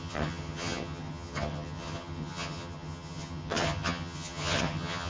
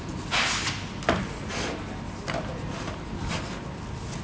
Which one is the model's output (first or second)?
first